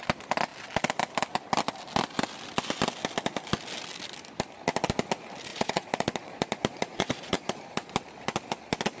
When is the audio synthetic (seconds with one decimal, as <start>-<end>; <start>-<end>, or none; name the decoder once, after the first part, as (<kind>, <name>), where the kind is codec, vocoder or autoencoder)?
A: 5.5-7.9 (vocoder, Vocos)

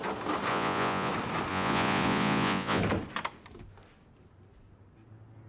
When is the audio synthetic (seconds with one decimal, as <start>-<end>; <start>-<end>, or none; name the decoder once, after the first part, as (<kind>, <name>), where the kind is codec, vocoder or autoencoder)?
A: 0.5-1.1 (vocoder, Vocos); 1.5-2.8